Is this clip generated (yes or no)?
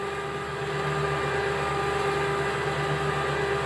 no